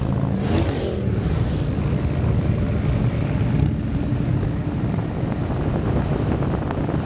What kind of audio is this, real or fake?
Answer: real